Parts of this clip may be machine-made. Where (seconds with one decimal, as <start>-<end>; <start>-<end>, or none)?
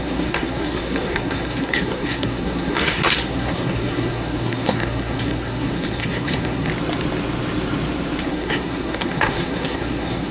0.0-6.7; 8.2-10.3